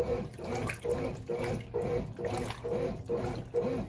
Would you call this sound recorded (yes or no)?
yes